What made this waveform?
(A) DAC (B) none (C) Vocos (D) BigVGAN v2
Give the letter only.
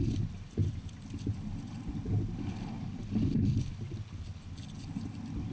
B